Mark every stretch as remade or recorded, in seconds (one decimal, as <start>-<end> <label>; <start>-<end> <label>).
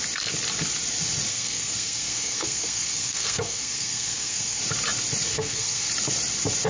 0.0-1.3 recorded; 1.3-4.6 remade; 4.6-5.3 recorded; 5.3-5.9 remade; 5.9-6.7 recorded